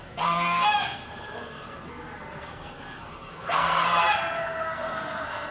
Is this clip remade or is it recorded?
remade